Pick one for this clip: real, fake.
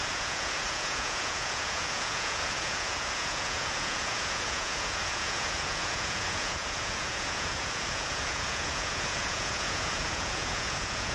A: fake